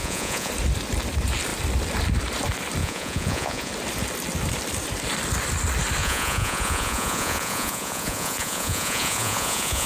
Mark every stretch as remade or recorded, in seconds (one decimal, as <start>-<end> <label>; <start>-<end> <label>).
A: 0.0-0.5 remade; 0.5-2.8 recorded; 2.8-3.7 remade; 3.7-6.0 recorded; 6.0-9.9 remade